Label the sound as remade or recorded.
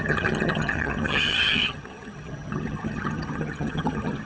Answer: remade